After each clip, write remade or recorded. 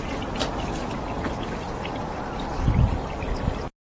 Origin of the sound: recorded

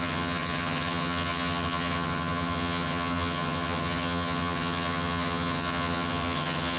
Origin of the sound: remade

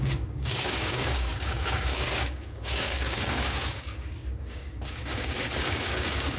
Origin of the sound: remade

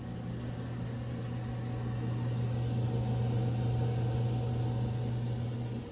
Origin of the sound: recorded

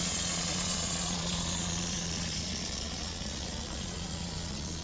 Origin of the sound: remade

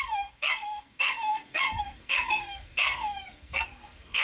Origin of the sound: remade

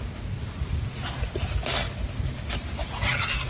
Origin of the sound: recorded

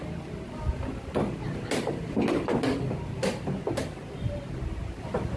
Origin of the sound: recorded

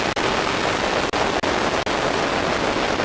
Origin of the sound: recorded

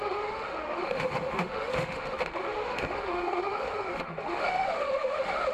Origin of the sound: remade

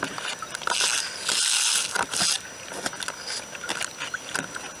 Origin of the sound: recorded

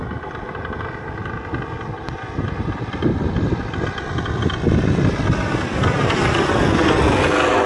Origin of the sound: recorded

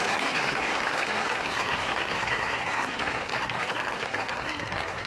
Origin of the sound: remade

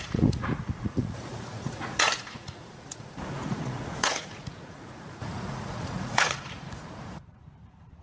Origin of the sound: remade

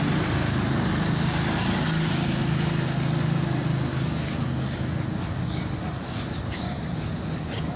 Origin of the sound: recorded